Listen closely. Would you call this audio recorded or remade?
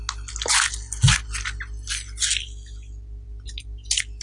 recorded